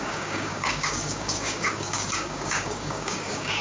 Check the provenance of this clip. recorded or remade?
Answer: remade